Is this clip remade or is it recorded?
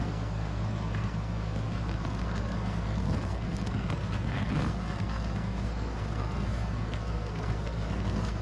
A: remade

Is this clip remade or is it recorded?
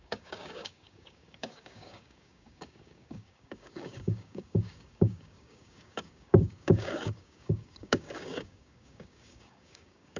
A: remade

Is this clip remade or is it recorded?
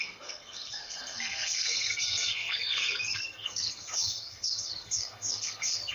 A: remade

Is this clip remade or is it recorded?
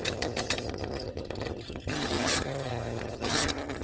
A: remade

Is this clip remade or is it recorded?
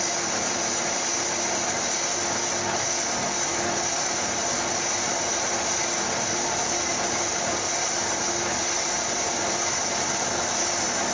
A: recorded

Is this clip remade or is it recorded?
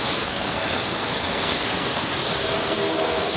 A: remade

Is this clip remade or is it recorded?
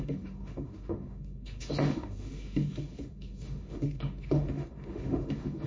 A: remade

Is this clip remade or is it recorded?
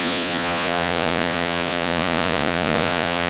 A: remade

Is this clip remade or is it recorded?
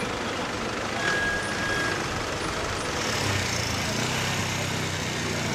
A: recorded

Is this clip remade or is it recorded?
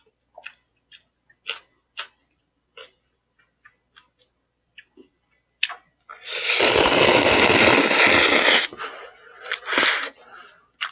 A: recorded